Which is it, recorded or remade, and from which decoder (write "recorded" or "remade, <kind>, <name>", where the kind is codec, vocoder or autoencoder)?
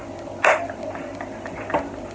recorded